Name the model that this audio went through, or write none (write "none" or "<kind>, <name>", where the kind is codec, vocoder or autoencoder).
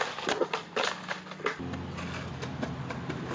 none